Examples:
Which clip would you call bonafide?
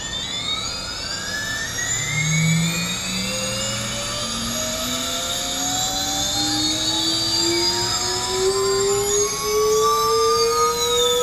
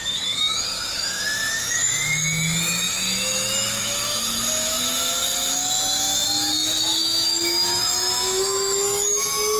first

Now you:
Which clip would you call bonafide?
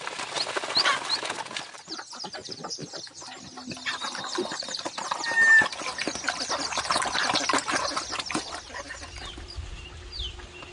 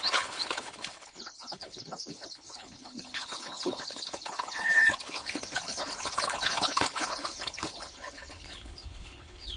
first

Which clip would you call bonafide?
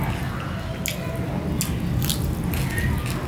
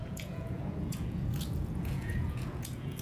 first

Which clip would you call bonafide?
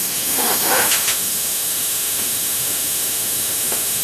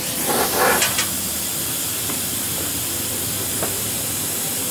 second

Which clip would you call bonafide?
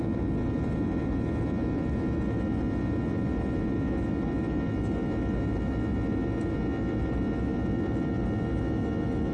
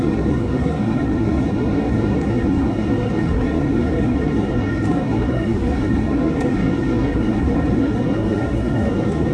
first